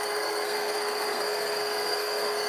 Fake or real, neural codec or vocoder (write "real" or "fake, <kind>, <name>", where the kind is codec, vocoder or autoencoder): fake, codec, SNAC